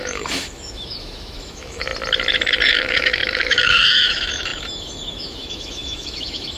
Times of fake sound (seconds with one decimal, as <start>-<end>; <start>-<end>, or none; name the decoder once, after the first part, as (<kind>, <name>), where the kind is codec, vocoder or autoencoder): 0.0-1.9 (autoencoder, DAC-VAE); 2.7-6.6